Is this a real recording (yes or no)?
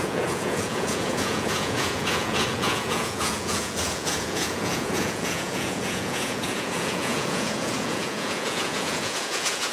no